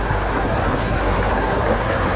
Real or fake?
fake